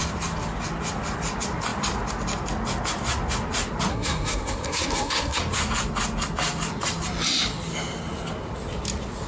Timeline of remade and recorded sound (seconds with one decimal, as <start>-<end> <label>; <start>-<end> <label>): 0.0-3.9 recorded; 3.9-5.4 remade; 5.4-9.3 recorded